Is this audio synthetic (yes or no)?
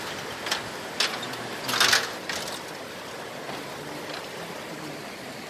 no